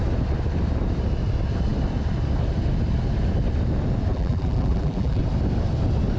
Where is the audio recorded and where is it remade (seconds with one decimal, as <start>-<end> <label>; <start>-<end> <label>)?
0.0-4.1 recorded; 4.1-5.2 remade; 5.2-6.2 recorded

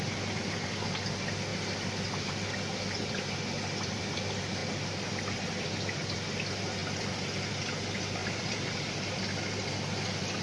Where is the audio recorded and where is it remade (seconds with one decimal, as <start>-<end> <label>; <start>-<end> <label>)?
0.0-8.2 recorded; 8.2-9.3 remade; 9.3-10.4 recorded